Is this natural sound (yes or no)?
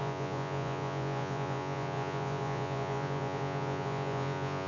no